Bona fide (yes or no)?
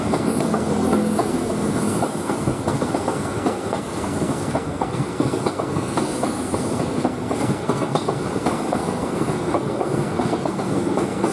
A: no